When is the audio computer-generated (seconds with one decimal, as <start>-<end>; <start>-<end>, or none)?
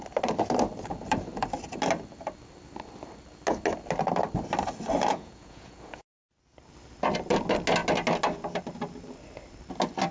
5.1-6.3